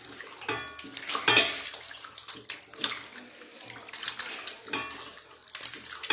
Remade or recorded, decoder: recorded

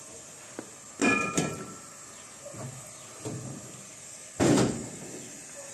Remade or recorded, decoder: recorded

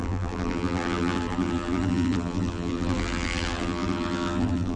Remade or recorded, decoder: remade, vocoder, BigVGAN v2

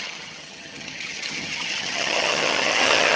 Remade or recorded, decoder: remade, vocoder, HiFi-GAN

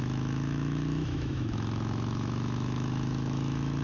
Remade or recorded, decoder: remade, autoencoder, DAC-VAE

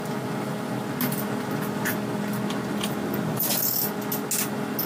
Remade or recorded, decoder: recorded